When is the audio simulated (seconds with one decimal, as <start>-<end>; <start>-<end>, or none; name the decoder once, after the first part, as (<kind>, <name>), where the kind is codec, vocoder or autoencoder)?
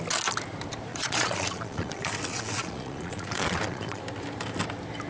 0.9-4.0 (vocoder, Vocos)